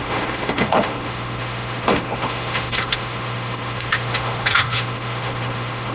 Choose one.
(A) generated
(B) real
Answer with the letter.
A